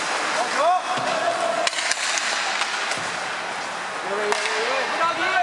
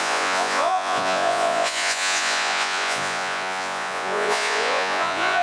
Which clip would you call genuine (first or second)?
first